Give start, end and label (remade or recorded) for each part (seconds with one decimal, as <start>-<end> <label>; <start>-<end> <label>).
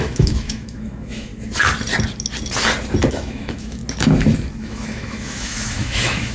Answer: 0.0-1.3 remade; 1.3-3.1 recorded; 3.1-3.8 remade; 3.8-4.6 recorded; 4.6-6.3 remade